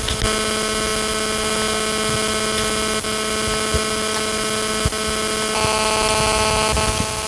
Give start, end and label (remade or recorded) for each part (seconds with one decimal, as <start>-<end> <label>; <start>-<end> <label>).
0.0-7.3 recorded